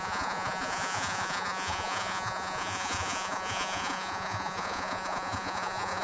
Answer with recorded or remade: remade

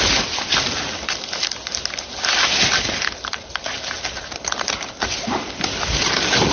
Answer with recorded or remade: recorded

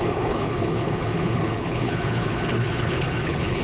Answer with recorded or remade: remade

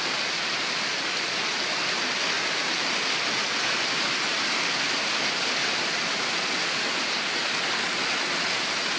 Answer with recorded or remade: recorded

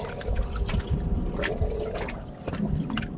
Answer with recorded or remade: recorded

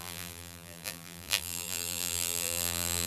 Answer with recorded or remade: remade